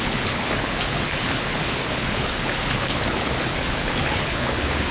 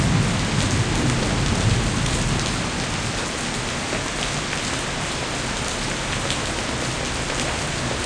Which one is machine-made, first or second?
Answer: first